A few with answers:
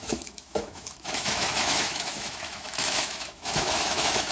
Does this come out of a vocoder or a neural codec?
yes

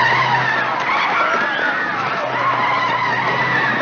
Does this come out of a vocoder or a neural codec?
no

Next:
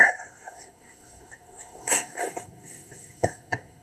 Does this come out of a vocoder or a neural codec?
yes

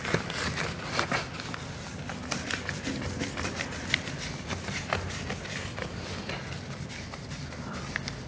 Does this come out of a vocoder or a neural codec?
no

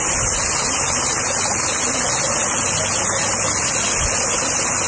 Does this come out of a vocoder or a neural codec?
no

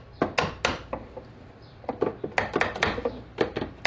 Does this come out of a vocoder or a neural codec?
no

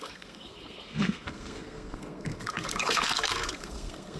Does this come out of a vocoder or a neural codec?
yes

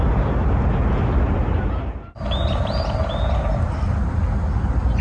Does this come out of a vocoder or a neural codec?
no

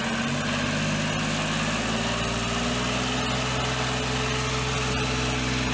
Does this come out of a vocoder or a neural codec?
no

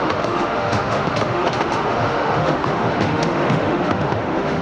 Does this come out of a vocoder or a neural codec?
yes